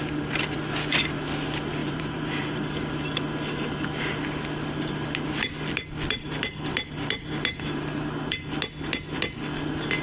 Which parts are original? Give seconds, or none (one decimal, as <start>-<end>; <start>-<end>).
0.0-1.8; 2.9-10.0